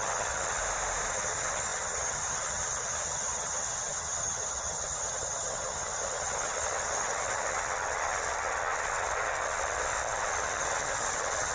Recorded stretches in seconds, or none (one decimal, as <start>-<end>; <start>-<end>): 0.6-1.1